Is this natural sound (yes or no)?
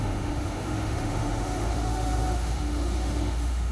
no